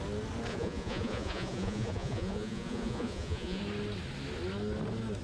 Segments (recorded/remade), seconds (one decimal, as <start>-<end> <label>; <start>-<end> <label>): 0.0-0.5 recorded; 0.5-3.6 remade; 3.6-5.2 recorded